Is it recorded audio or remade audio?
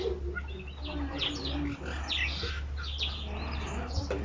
recorded